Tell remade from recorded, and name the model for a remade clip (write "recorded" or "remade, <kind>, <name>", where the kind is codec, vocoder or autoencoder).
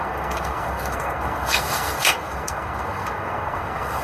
remade, codec, SNAC